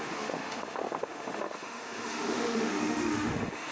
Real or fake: fake